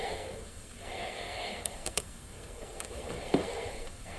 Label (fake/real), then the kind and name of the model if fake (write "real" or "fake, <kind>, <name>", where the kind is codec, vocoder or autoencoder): fake, codec, SNAC